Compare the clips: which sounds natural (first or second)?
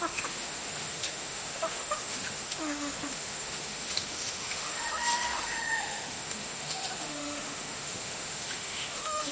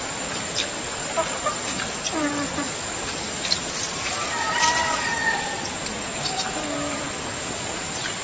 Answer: second